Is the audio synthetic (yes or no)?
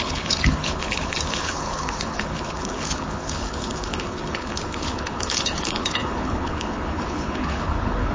yes